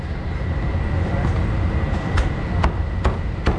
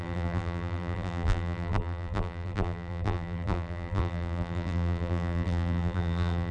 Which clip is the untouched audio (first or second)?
first